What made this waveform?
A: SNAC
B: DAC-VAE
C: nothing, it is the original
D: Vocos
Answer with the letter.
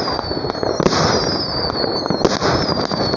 C